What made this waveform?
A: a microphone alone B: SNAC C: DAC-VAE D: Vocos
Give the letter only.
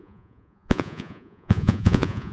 D